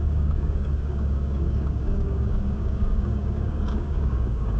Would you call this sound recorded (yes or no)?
no